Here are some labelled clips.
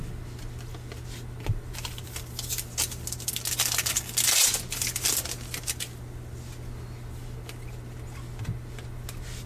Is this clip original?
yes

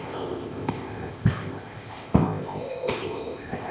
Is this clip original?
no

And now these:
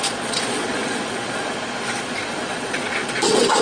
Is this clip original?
no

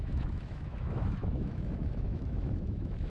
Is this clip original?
no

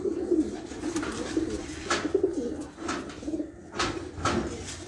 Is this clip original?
yes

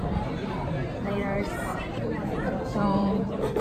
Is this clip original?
no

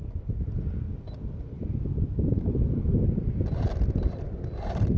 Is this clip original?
yes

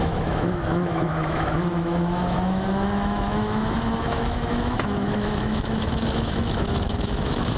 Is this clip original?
no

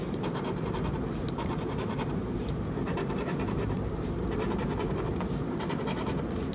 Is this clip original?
no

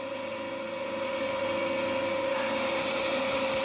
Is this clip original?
yes